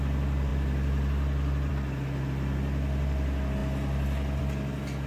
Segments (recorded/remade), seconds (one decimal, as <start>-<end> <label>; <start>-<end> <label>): 0.0-5.1 recorded